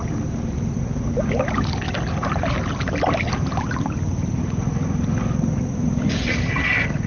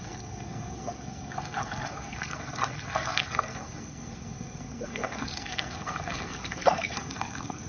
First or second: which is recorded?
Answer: first